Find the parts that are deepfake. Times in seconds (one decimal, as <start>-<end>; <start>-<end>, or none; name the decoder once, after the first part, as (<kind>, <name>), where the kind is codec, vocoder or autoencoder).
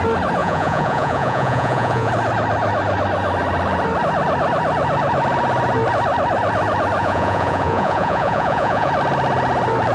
0.4-2.1 (vocoder, Vocos); 7.0-8.9